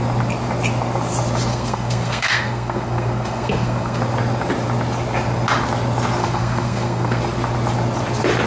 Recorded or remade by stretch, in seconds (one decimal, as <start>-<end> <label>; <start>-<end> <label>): 0.0-1.5 recorded; 1.5-4.0 remade; 4.0-6.2 recorded; 6.2-7.2 remade; 7.2-8.5 recorded